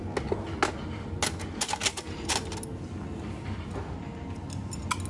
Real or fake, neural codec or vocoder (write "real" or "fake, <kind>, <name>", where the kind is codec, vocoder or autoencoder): real